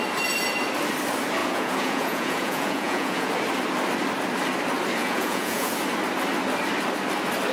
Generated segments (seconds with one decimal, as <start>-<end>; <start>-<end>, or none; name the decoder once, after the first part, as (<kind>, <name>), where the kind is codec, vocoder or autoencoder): 1.4-3.3 (vocoder, Vocos); 5.0-5.7